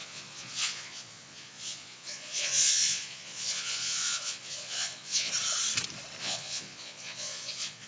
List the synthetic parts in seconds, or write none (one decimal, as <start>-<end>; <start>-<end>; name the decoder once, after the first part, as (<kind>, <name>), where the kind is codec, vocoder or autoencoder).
0.0-5.3 (vocoder, Vocos); 6.2-7.9